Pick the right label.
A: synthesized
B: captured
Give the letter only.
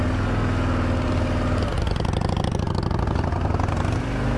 B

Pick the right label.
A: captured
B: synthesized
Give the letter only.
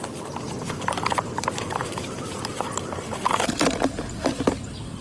B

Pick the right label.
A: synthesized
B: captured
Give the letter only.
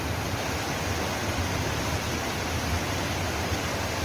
B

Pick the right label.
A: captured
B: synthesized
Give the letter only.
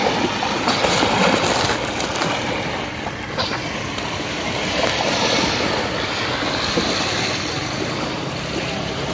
A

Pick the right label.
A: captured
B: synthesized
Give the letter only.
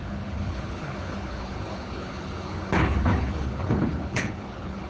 B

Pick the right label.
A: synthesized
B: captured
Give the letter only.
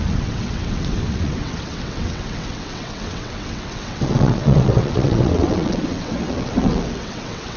A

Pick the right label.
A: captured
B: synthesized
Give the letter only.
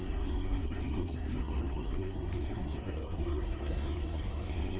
B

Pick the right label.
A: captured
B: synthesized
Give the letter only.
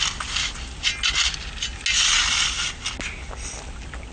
A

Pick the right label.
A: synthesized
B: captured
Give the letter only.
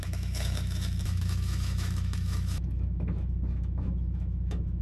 A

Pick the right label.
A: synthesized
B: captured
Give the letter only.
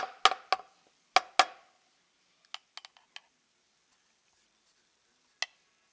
B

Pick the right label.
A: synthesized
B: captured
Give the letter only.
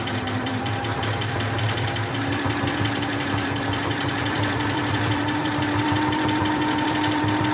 A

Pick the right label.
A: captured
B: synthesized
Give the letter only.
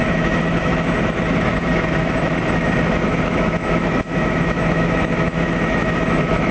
B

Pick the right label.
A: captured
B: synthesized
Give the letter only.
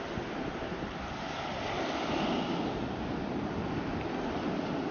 A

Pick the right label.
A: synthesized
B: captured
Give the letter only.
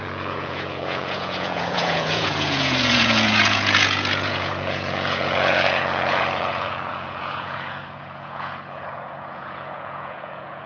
A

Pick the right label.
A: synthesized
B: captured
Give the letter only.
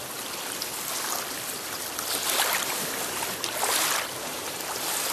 B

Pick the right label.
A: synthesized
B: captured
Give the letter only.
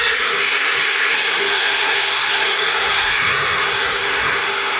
A